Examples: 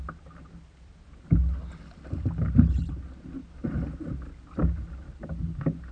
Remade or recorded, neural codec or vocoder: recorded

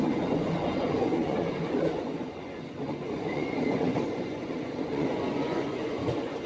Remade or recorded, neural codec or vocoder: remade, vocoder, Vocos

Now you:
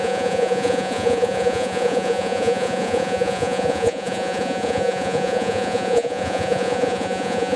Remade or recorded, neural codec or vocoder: remade, vocoder, Vocos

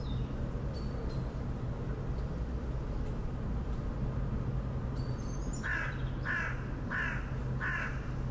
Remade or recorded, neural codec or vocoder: recorded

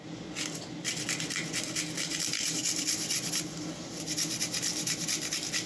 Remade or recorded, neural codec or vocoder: recorded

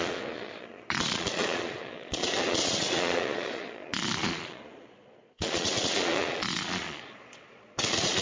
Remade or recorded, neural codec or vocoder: remade, vocoder, Vocos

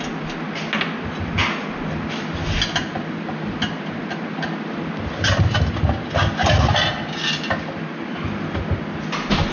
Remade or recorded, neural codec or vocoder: recorded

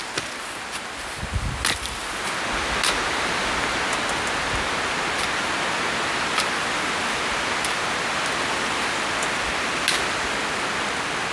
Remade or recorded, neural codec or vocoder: recorded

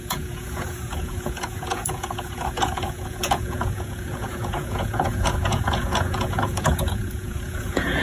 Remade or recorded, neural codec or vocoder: remade, vocoder, Vocos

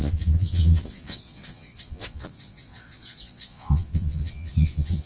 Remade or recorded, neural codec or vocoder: remade, vocoder, Vocos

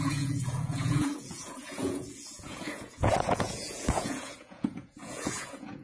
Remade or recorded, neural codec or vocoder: remade, vocoder, Vocos